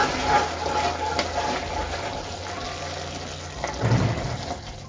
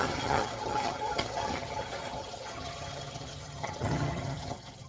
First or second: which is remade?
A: second